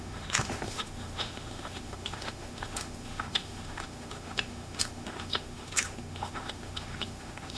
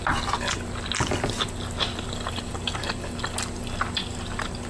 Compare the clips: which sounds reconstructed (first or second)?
first